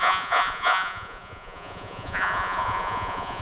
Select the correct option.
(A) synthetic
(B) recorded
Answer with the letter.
A